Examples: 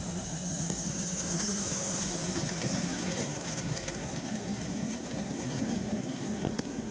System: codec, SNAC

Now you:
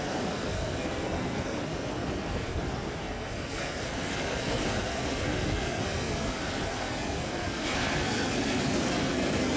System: codec, SNAC